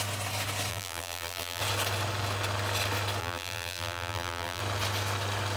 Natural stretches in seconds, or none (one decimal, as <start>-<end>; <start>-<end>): 0.0-0.7; 1.6-3.2; 4.6-5.6